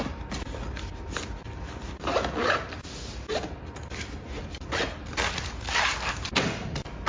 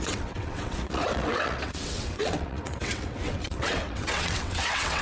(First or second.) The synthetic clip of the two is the second